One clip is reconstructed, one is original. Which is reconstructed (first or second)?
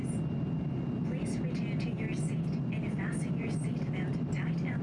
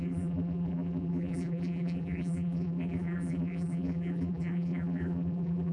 second